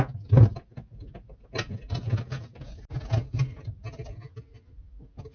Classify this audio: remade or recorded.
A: recorded